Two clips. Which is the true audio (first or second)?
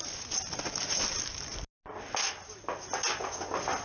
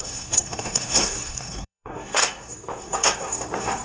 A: first